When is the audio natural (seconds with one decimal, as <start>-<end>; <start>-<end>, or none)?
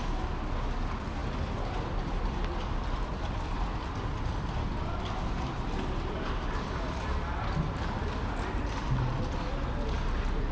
0.0-10.5